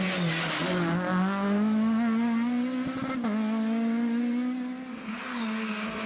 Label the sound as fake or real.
real